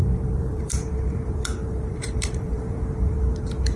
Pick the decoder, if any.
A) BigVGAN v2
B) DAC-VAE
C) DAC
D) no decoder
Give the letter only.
A